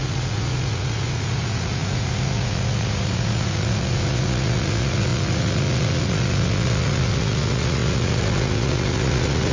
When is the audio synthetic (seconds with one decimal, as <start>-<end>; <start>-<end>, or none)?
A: 0.0-9.5